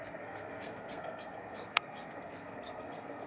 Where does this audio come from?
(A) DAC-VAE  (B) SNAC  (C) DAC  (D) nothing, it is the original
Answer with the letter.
B